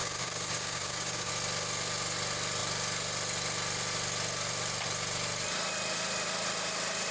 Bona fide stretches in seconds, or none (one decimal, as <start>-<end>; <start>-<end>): 1.3-7.1